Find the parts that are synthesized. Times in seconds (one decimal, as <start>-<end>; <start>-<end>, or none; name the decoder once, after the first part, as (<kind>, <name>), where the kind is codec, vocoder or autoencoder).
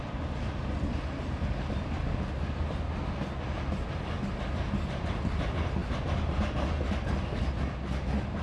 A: none